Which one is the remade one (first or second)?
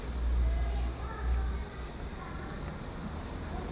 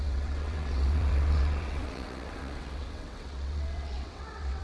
second